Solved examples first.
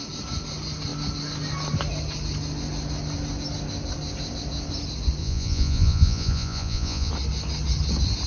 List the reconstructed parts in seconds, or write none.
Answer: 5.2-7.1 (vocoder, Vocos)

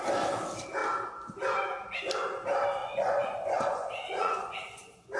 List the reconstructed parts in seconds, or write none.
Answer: 2.8-5.2 (vocoder, Vocos)

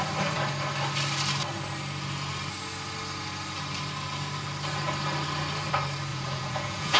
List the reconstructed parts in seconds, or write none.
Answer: 6.1-7.0 (vocoder, Vocos)

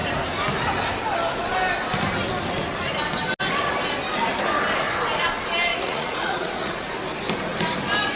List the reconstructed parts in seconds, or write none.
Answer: 5.7-6.9 (vocoder, Vocos)

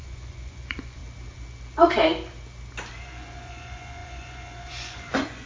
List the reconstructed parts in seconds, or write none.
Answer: 0.0-1.0 (vocoder, Vocos); 3.0-5.5

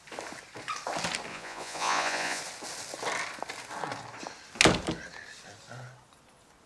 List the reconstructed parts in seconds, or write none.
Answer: 1.3-2.4 (vocoder, Vocos)

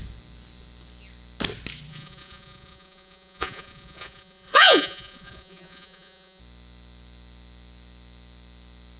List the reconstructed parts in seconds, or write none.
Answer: 1.9-6.4 (vocoder, Vocos)

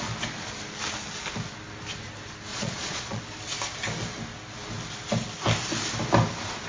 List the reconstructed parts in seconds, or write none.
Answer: 2.5-3.2 (vocoder, Vocos)